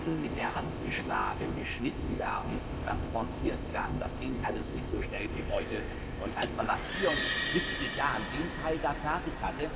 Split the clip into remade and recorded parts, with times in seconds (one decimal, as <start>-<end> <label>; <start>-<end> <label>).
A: 0.0-6.8 remade; 6.8-9.8 recorded